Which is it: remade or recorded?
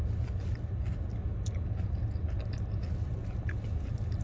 recorded